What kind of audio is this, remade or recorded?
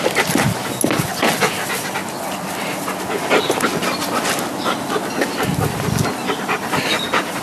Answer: recorded